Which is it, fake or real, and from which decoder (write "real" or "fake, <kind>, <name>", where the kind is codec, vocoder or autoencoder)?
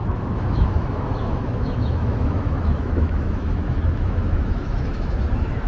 fake, autoencoder, DAC-VAE